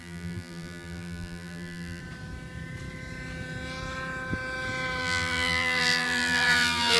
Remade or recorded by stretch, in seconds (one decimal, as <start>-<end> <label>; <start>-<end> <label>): 0.0-2.0 remade; 2.0-5.0 recorded; 5.0-7.0 remade